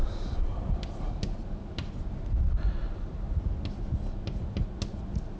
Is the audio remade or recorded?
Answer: recorded